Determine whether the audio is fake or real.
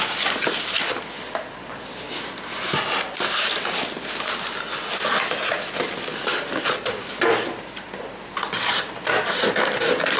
real